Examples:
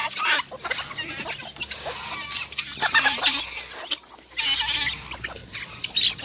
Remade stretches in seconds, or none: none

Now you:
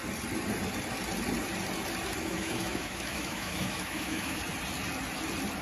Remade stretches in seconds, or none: 2.2-4.4 (autoencoder, DAC-VAE)

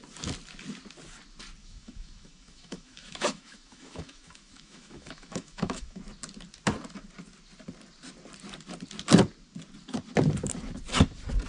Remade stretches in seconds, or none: 1.6-6.0 (autoencoder, DAC-VAE)

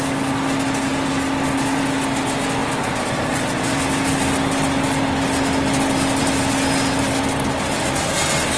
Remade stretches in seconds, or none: none

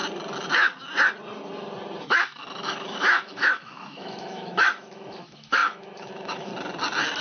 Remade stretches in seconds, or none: 2.0-6.5 (autoencoder, DAC-VAE)

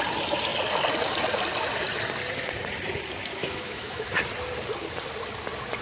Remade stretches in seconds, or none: 3.4-4.1 (autoencoder, DAC-VAE)